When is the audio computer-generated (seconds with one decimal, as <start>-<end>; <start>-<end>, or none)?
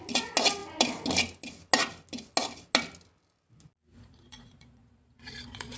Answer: 3.9-5.8